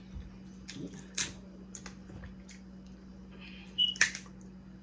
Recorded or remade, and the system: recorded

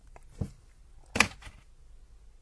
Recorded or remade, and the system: recorded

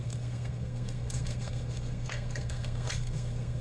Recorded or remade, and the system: remade, codec, SNAC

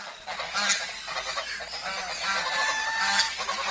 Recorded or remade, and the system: recorded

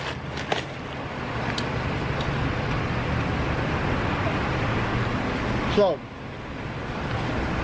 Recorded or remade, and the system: recorded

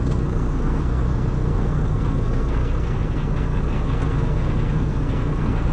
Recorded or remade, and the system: remade, codec, SNAC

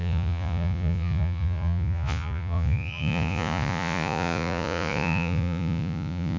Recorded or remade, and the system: remade, vocoder, Vocos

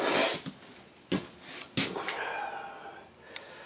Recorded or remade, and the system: recorded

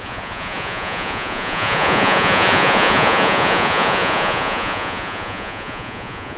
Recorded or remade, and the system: remade, vocoder, Vocos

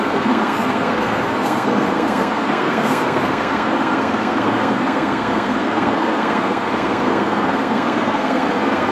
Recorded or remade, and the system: remade, codec, SNAC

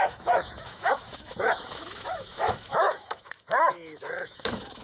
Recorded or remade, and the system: remade, autoencoder, DAC-VAE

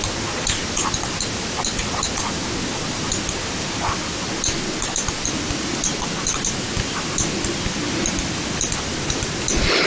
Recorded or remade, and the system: recorded